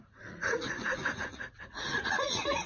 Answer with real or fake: fake